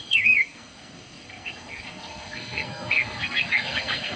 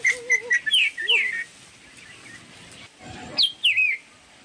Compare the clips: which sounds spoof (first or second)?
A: first